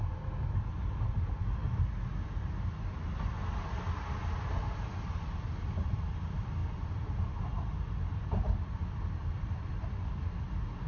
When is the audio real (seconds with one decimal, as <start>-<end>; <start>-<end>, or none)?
0.0-10.9